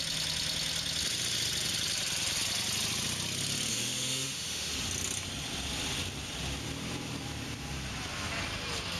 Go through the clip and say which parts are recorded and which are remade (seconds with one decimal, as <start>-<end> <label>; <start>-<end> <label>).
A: 0.0-3.7 recorded; 3.7-4.7 remade; 4.7-9.0 recorded